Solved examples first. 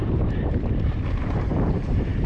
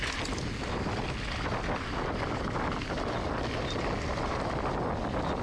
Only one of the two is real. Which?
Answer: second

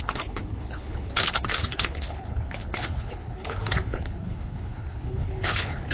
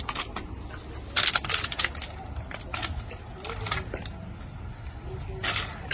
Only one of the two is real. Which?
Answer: second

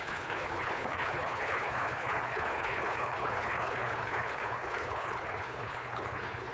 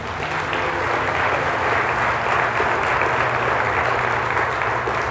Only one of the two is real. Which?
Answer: second